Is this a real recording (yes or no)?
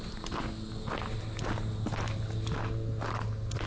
yes